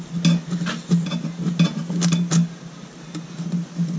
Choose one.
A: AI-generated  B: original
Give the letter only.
B